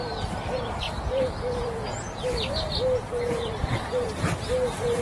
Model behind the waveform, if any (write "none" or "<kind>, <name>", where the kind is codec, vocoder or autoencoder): vocoder, BigVGAN v2